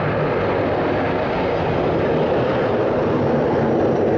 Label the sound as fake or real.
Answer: real